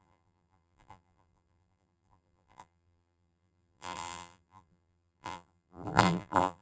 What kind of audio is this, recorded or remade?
remade